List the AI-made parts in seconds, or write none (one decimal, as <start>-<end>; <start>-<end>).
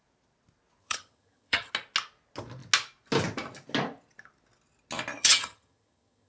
0.8-1.7; 5.2-6.3